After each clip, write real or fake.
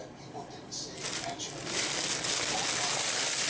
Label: real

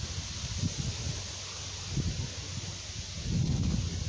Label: real